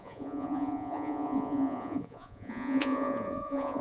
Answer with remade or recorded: remade